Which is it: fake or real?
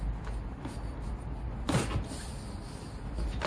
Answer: real